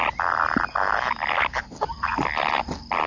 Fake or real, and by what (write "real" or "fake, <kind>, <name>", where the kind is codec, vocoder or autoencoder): real